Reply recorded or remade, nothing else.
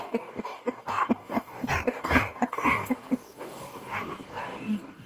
remade